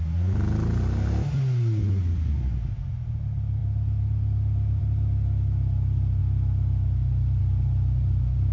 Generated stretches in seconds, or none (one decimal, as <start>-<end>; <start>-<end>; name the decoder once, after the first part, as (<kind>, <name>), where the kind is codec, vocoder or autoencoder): none